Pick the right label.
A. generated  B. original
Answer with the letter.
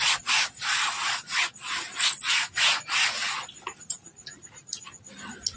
B